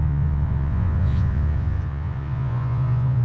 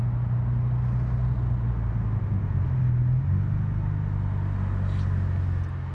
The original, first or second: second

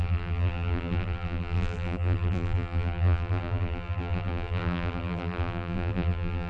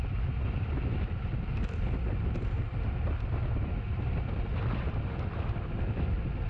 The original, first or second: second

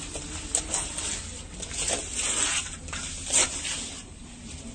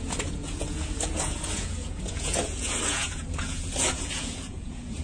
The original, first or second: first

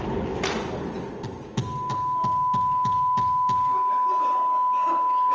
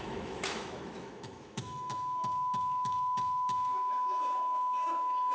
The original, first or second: first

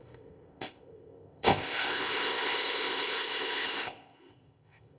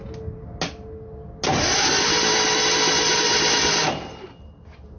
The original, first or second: second